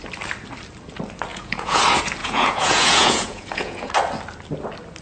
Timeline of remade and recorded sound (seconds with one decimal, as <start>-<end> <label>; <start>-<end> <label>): 0.0-1.3 recorded; 1.3-1.8 remade; 1.8-2.2 recorded; 2.2-3.9 remade; 3.9-5.0 recorded